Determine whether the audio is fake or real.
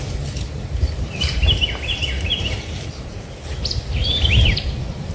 fake